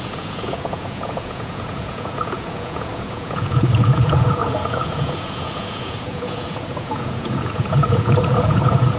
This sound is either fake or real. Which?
fake